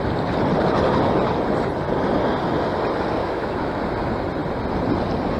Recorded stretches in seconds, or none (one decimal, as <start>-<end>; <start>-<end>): 0.0-3.2; 3.8-5.4